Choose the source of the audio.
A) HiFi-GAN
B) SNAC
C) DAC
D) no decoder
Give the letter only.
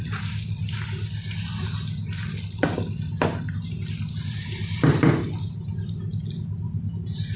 D